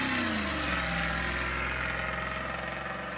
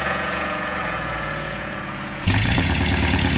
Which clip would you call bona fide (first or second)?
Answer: first